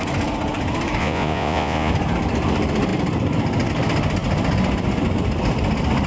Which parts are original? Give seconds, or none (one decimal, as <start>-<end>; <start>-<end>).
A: 0.0-1.0; 1.9-6.1